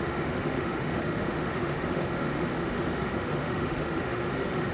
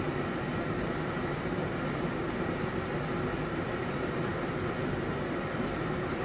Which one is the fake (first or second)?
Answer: first